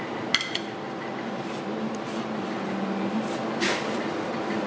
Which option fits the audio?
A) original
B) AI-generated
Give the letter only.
A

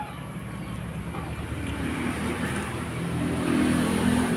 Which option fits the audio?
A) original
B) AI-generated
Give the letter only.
B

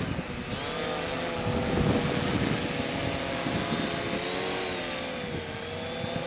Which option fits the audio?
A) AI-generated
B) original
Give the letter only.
B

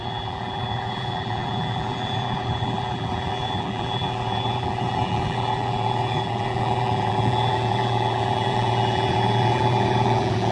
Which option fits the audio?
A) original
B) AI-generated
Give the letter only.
B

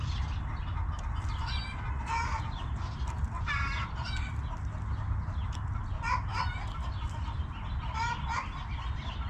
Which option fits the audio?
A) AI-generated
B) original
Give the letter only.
B